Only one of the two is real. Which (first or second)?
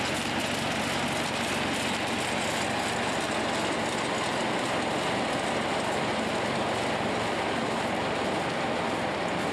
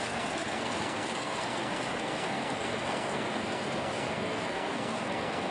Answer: first